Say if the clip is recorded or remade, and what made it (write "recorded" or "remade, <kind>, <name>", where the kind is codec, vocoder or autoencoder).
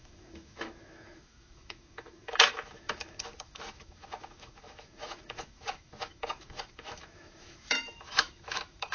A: remade, autoencoder, DAC-VAE